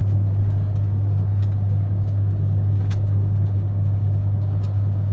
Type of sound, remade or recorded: remade